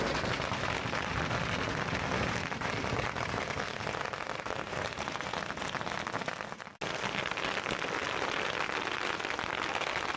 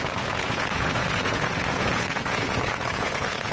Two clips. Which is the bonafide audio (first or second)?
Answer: first